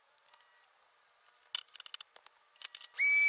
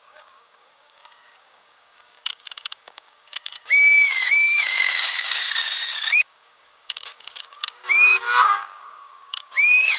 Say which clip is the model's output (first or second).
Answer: second